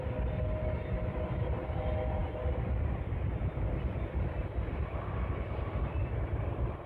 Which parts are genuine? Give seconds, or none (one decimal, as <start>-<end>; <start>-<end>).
0.0-6.0

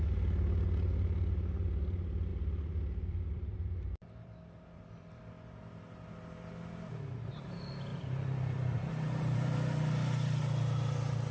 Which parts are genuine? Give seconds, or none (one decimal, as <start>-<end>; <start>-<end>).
0.0-2.3; 5.2-7.9; 10.4-11.3

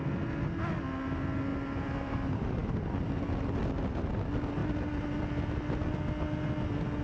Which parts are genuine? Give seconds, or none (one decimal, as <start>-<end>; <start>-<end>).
0.0-4.6; 5.2-7.0

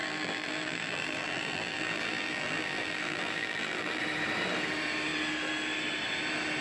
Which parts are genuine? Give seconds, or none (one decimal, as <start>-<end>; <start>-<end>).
4.0-6.6